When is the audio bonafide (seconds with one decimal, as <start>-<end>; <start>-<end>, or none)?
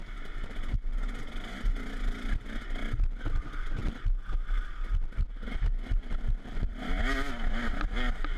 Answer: 0.0-3.2; 3.8-4.9